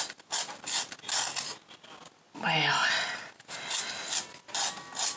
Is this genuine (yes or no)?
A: yes